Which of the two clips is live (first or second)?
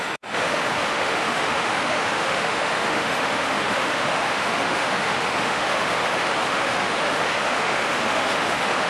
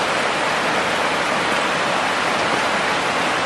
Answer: second